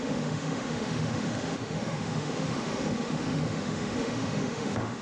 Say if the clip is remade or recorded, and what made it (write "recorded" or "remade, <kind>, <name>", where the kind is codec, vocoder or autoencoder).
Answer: remade, autoencoder, DAC-VAE